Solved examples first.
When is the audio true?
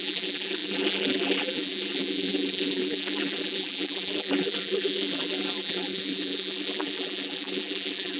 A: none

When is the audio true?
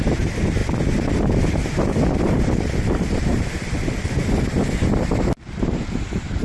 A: 0.6-2.2; 3.3-5.4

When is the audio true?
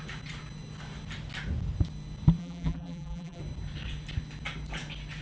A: 0.0-2.4; 3.4-5.2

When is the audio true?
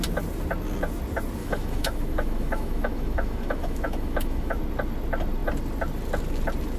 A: 0.0-1.4; 4.6-6.8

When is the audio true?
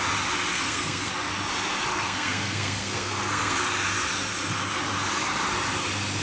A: 0.0-0.5; 1.1-1.9; 3.6-6.2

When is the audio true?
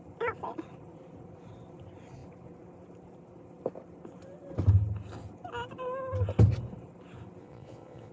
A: 0.0-7.4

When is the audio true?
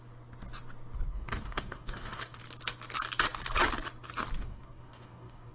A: 0.0-1.1; 2.4-4.4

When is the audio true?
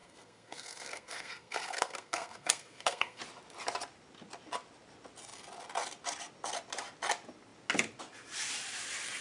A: 3.2-9.2